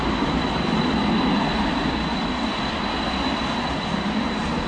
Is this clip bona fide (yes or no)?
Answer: yes